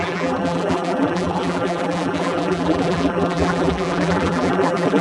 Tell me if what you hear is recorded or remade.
remade